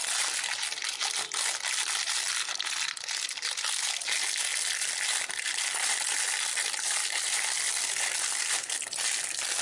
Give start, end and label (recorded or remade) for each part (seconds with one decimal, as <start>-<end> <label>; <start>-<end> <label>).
0.0-9.6 recorded

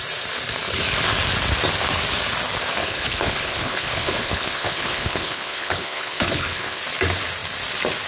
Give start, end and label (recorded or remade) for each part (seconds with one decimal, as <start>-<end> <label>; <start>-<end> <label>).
0.0-2.8 recorded; 2.8-6.8 remade; 6.8-8.1 recorded

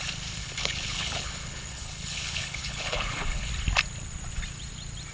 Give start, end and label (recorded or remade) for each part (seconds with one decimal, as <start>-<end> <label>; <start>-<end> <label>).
0.0-0.4 recorded; 0.4-3.5 remade; 3.5-5.1 recorded

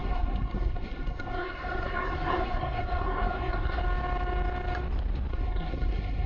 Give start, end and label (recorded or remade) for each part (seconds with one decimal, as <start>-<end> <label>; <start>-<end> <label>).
0.0-3.8 remade; 3.8-5.3 recorded; 5.3-6.3 remade

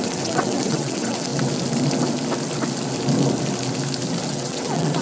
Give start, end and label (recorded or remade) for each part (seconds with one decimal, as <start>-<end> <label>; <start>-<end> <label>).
0.0-1.3 remade; 1.3-4.3 recorded; 4.3-5.0 remade